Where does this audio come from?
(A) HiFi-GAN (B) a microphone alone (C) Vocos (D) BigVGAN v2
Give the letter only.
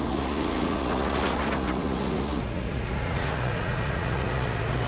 C